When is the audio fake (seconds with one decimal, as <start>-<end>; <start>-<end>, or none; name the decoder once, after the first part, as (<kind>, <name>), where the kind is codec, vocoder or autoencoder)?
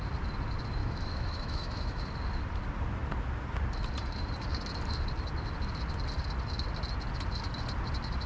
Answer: 0.8-2.0 (autoencoder, DAC-VAE)